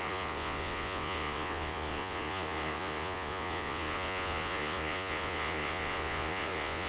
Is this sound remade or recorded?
remade